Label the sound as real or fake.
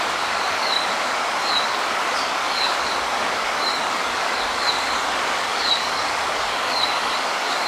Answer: fake